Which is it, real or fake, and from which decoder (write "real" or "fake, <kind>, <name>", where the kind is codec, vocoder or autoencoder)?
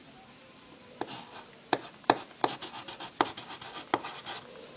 real